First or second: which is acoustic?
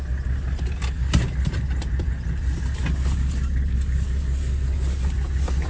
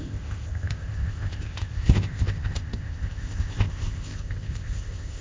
first